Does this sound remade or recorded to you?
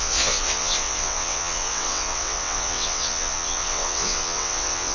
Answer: remade